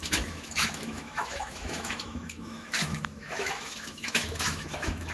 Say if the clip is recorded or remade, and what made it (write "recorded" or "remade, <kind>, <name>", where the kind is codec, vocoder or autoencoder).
remade, autoencoder, DAC-VAE